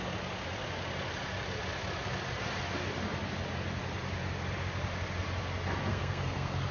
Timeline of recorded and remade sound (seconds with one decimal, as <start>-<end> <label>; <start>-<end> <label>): 0.0-5.9 recorded; 5.9-6.7 remade